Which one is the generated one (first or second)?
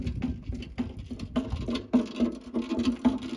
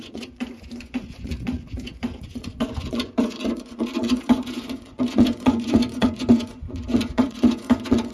second